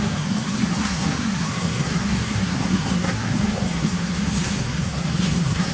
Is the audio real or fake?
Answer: fake